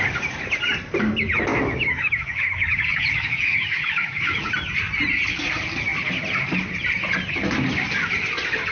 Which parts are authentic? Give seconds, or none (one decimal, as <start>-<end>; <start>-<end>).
0.0-1.5; 4.5-8.7